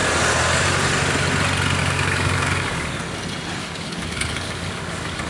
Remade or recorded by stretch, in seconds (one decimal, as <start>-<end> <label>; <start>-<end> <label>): 0.0-1.8 recorded; 1.8-2.9 remade; 2.9-3.6 recorded; 3.6-5.3 remade

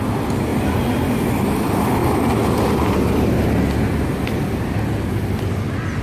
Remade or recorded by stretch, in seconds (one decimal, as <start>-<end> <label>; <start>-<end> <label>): 0.0-6.0 recorded

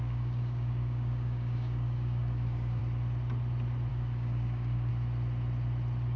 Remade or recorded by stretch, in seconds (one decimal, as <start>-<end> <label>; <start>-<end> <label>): 0.0-2.8 remade; 2.8-3.9 recorded; 3.9-4.9 remade; 4.9-6.2 recorded

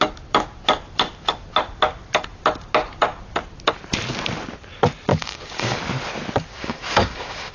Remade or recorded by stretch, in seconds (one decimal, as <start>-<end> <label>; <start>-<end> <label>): 0.0-5.1 recorded; 5.1-5.8 remade; 5.8-6.5 recorded; 6.5-7.5 remade

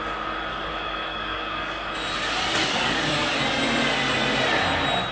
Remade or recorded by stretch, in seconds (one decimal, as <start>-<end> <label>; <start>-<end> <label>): 0.0-0.5 recorded; 0.5-1.9 remade; 1.9-2.6 recorded; 2.6-3.4 remade; 3.4-5.1 recorded

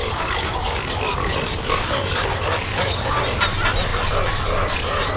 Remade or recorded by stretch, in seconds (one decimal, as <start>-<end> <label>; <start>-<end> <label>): 0.0-3.1 remade; 3.1-5.2 recorded

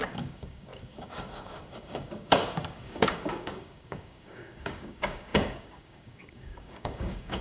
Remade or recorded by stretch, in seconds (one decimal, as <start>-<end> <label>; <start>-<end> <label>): 0.0-7.4 remade